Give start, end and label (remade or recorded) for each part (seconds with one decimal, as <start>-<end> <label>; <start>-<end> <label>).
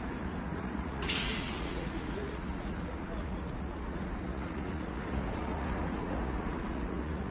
0.0-7.3 remade